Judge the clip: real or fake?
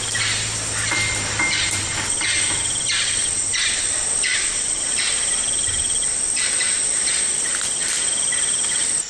real